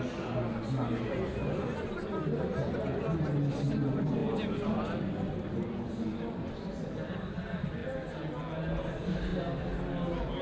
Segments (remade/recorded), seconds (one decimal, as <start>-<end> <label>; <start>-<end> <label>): 0.0-10.4 recorded